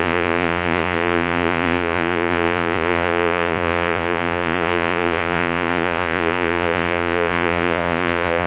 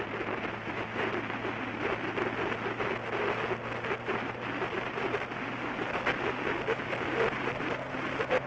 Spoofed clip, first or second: first